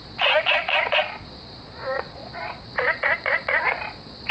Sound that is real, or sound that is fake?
fake